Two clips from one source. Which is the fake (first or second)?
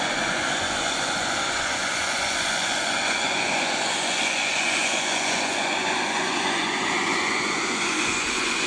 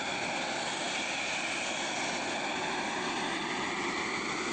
first